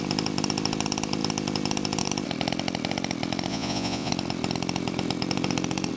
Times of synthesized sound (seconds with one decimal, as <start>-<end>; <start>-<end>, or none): 3.5-4.1